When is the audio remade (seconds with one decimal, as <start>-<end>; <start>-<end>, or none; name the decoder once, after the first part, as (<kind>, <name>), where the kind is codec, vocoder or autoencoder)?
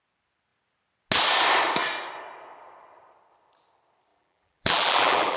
4.1-5.4 (vocoder, BigVGAN v2)